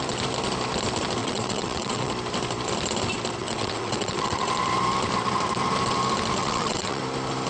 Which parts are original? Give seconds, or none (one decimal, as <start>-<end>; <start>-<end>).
0.0-1.2; 2.1-3.4; 4.5-6.4; 7.0-7.5